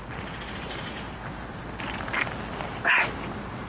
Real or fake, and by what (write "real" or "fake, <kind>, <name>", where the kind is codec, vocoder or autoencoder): real